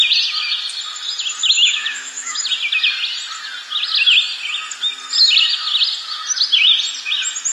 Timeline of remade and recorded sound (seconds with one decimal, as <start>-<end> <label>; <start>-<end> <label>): 0.0-1.4 recorded; 1.4-2.4 remade; 2.4-7.5 recorded